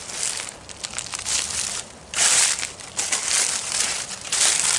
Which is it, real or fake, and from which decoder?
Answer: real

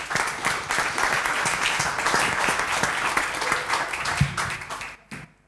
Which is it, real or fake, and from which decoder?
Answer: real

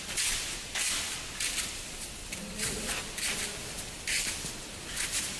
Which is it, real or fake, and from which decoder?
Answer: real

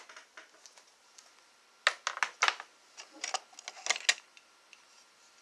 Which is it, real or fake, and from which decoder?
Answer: real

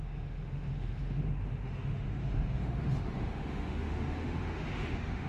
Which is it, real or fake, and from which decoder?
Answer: fake, autoencoder, DAC-VAE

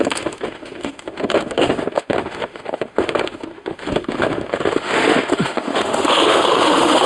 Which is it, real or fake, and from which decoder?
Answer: fake, autoencoder, DAC-VAE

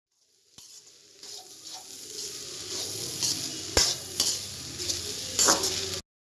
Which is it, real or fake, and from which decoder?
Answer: real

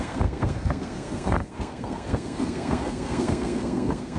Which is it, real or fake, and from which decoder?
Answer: fake, codec, SNAC